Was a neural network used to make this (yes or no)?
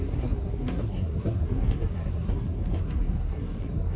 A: yes